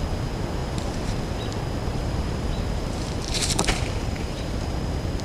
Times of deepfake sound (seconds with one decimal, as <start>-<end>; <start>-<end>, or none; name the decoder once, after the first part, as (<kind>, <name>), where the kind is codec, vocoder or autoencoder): 0.6-1.2 (vocoder, BigVGAN v2); 1.9-4.6